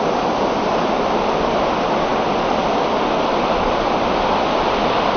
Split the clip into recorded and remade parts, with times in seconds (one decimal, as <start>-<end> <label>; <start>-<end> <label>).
0.0-5.2 recorded